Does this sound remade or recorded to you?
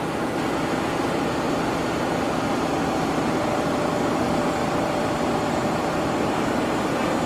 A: recorded